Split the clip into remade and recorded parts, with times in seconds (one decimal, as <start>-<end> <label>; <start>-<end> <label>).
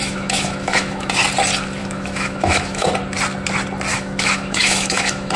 0.0-1.1 remade; 1.1-1.8 recorded; 1.8-2.9 remade; 2.9-3.9 recorded; 3.9-5.4 remade